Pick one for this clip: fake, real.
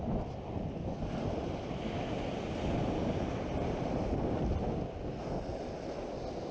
real